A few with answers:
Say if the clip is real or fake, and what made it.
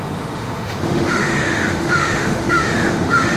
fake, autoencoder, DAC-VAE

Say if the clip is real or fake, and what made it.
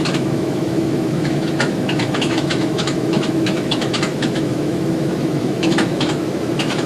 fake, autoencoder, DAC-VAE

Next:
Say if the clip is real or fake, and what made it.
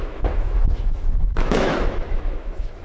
fake, autoencoder, DAC-VAE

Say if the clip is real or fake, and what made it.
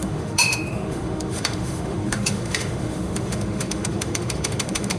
fake, autoencoder, DAC-VAE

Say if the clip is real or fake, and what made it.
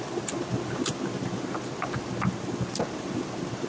real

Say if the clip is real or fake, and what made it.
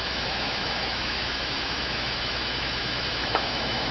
fake, autoencoder, DAC-VAE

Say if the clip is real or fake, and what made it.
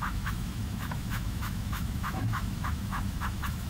fake, autoencoder, DAC-VAE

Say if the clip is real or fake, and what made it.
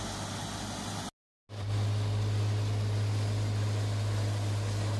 real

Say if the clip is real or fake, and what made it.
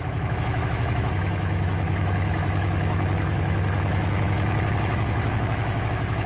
fake, autoencoder, DAC-VAE